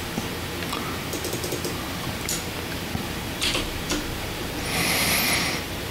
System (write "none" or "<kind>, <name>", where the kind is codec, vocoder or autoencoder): vocoder, BigVGAN v2